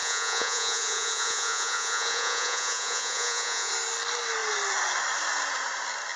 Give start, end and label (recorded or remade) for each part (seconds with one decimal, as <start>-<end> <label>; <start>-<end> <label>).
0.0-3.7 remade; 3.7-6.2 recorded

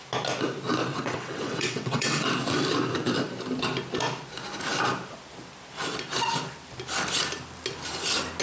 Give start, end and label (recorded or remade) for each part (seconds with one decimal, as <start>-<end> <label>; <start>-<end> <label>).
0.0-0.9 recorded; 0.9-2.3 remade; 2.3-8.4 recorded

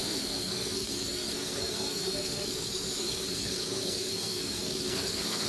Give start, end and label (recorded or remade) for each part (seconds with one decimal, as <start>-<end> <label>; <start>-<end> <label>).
0.0-5.5 remade